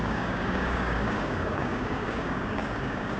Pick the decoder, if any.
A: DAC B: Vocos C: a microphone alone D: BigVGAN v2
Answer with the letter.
A